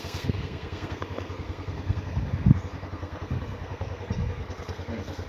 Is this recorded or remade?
remade